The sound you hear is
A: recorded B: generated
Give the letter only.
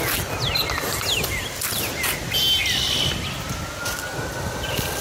A